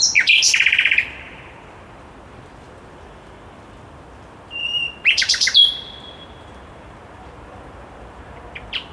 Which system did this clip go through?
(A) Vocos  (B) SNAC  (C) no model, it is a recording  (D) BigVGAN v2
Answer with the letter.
D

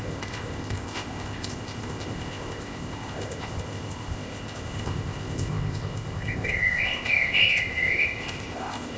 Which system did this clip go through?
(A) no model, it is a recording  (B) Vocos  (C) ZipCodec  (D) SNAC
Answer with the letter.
C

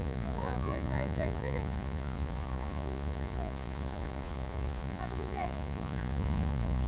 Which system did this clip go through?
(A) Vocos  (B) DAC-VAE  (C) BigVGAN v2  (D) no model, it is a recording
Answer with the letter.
A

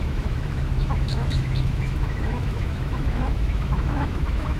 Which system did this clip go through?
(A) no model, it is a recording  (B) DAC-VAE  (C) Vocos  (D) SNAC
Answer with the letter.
B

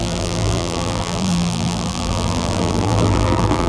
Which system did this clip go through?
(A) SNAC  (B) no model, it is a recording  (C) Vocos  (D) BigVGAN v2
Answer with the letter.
D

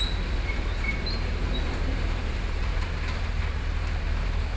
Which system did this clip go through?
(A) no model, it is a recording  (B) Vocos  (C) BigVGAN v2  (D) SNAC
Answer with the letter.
C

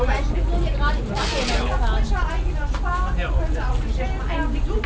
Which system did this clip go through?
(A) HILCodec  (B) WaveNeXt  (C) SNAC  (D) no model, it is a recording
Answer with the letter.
D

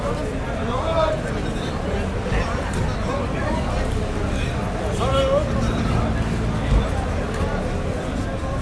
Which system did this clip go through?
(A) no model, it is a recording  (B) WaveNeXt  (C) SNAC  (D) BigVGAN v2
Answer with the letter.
A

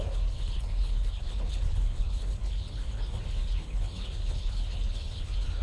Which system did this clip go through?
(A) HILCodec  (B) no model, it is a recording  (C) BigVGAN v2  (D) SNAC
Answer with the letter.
A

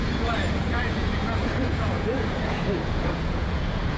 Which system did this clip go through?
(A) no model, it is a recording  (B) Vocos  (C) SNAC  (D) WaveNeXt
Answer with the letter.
B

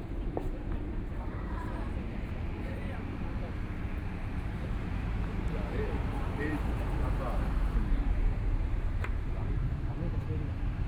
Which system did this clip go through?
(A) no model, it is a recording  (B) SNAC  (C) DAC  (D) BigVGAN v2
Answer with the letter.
D